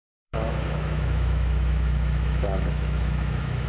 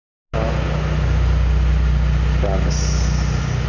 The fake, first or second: first